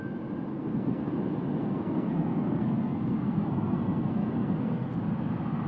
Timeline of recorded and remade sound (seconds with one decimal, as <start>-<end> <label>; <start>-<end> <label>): 0.0-0.5 recorded; 0.5-1.1 remade; 1.1-1.6 recorded; 1.6-5.0 remade; 5.0-5.7 recorded

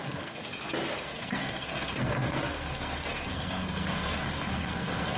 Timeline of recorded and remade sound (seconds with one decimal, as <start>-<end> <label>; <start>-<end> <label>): 0.0-0.4 remade; 0.4-1.0 recorded; 1.0-5.2 remade

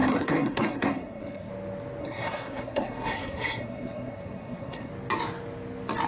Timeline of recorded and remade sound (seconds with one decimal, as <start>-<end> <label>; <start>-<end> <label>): 0.0-1.5 remade; 1.5-2.0 recorded; 2.0-4.9 remade; 4.9-6.1 recorded

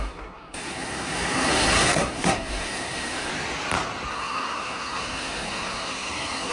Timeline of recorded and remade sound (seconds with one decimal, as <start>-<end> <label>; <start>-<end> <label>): 0.0-3.3 remade; 3.3-4.1 recorded; 4.1-6.5 remade

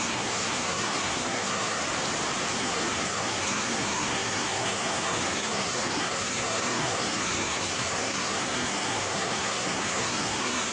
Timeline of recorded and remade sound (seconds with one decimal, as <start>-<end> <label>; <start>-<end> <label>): 0.0-1.8 remade; 1.8-2.6 recorded; 2.6-10.7 remade